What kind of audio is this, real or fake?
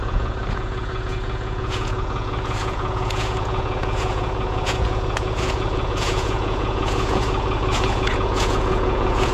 fake